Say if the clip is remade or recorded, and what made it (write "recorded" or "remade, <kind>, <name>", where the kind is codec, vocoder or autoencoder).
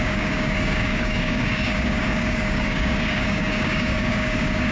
remade, codec, DAC